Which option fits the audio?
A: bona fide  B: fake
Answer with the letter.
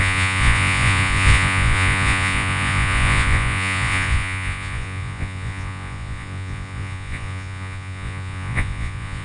B